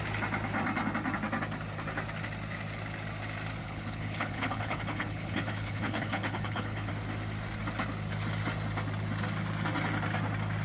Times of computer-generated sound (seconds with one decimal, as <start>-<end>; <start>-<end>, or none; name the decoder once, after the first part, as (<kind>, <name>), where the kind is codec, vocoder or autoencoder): 3.6-6.9 (codec, HILCodec)